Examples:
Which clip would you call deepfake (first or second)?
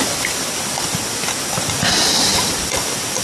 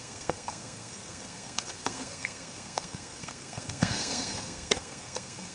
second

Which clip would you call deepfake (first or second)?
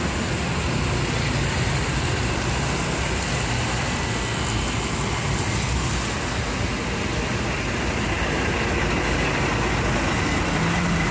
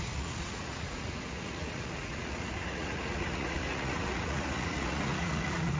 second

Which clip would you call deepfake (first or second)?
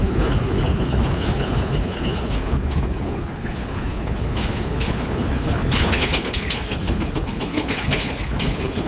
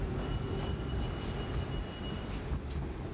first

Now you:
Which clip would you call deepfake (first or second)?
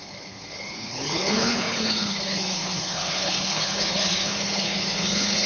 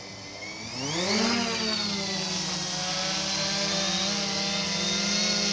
first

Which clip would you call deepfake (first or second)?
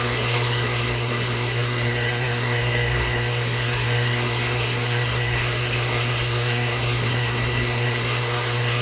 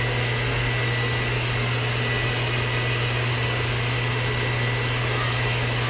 first